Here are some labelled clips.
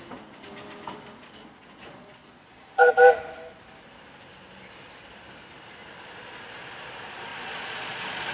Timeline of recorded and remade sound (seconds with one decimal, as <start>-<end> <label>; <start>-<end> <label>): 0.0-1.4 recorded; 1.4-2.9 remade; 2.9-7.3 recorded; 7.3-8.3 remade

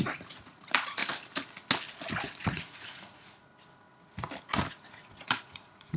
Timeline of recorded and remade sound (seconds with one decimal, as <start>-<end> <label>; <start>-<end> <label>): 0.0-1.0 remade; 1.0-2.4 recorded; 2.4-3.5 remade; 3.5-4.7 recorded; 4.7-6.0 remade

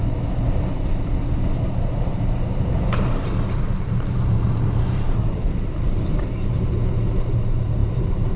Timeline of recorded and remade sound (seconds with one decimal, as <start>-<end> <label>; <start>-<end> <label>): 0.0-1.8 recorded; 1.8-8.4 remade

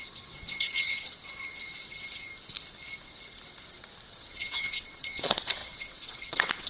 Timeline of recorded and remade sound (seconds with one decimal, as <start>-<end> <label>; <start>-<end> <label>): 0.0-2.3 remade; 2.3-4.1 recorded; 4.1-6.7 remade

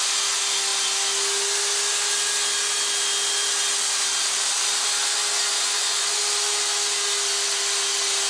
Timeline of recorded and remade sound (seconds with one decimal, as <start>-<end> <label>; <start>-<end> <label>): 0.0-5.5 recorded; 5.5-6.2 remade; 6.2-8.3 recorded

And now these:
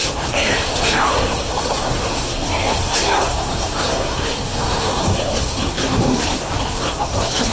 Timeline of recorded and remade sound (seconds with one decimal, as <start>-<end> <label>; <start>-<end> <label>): 0.0-7.5 remade